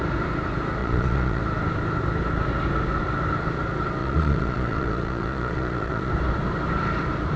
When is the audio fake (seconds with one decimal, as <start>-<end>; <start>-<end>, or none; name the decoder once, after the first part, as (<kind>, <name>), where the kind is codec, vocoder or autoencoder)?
0.8-1.4 (vocoder, Vocos); 4.0-6.1